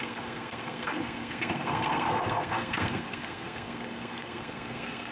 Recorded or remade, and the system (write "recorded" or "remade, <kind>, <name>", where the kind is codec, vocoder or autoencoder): remade, codec, SNAC